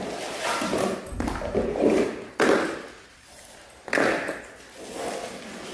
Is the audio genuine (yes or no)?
yes